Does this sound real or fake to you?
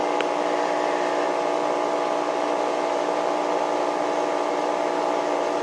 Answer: real